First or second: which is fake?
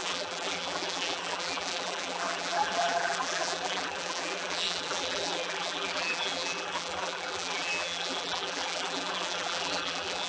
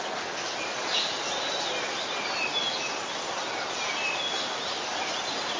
first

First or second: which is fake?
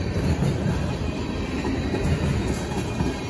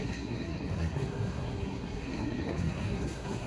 second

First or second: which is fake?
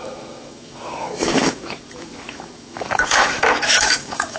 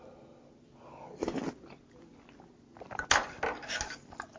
first